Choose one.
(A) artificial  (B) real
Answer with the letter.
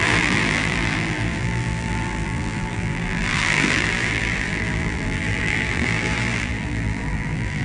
A